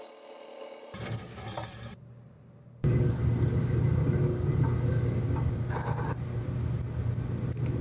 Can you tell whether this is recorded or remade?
recorded